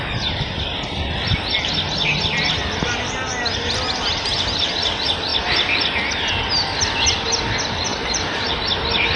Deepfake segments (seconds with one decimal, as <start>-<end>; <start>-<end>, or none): 7.9-8.6